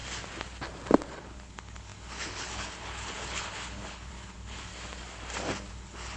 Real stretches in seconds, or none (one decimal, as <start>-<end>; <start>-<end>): 0.0-1.2; 4.7-5.7